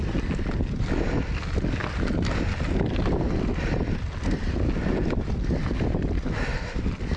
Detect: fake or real real